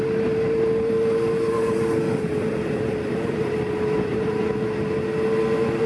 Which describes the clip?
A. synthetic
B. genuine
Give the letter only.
B